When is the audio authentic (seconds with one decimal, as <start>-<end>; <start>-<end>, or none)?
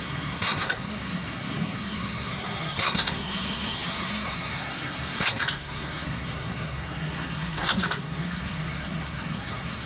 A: none